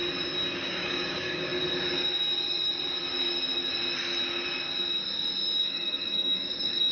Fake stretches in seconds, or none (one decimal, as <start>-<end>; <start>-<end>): 0.7-1.5; 5.6-6.9